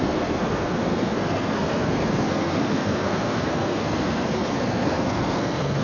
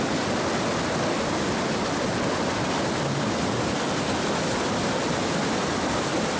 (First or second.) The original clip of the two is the second